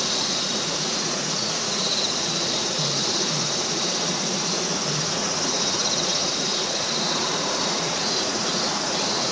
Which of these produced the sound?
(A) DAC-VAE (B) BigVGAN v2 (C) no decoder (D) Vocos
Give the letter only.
D